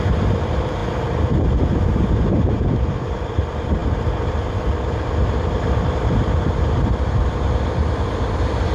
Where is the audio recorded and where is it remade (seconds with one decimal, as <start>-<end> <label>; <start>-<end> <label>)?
0.0-0.8 remade; 0.8-2.1 recorded; 2.1-8.7 remade